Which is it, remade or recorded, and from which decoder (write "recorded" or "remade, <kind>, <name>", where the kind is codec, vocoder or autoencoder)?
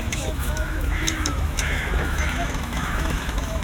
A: remade, autoencoder, DAC-VAE